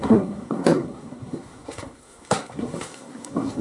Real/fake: fake